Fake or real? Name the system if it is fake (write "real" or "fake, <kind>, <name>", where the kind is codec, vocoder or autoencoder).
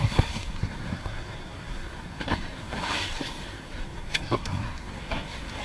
fake, codec, SNAC